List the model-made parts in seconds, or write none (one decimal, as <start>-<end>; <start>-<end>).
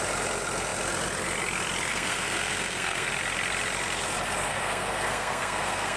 1.9-3.1; 4.5-6.0